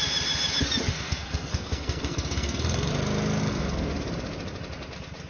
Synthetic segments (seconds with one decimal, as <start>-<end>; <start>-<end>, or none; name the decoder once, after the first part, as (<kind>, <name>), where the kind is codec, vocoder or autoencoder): 0.9-2.9 (codec, SNAC); 3.4-3.9